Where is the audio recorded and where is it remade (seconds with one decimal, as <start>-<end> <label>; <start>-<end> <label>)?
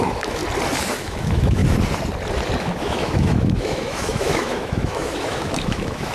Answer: 0.0-0.4 remade; 0.4-1.0 recorded; 1.0-1.6 remade; 1.6-2.6 recorded; 2.6-6.1 remade